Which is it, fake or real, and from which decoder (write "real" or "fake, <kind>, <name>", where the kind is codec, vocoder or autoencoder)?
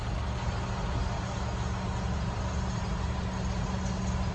real